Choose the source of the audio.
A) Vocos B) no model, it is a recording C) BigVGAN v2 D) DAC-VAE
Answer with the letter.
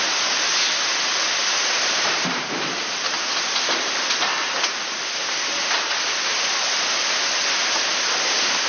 B